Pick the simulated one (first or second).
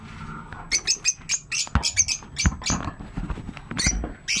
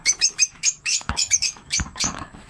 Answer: second